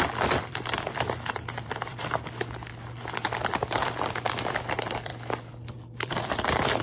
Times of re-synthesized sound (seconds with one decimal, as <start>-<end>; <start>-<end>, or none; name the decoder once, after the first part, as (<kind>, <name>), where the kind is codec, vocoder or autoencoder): 0.0-2.0 (vocoder, BigVGAN v2); 3.4-5.1; 5.7-6.8